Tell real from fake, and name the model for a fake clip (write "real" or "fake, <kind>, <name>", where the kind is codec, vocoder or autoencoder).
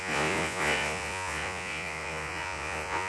fake, vocoder, Vocos